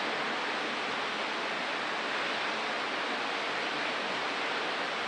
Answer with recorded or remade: recorded